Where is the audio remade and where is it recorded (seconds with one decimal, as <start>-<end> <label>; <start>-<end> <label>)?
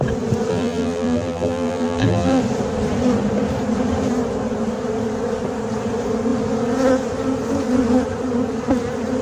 0.0-0.5 recorded; 0.5-2.4 remade; 2.4-9.2 recorded